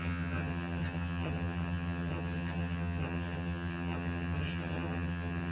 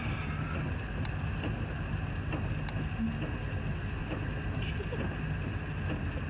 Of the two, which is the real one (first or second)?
second